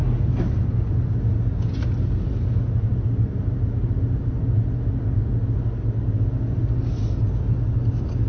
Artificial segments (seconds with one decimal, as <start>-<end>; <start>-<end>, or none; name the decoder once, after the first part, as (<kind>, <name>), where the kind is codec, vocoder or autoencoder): none